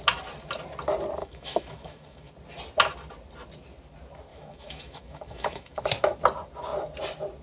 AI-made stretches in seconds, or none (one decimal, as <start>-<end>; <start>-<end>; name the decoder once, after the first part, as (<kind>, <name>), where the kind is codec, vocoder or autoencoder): 1.2-2.3 (autoencoder, DAC-VAE); 4.3-5.8